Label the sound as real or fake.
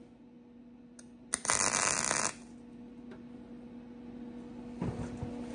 real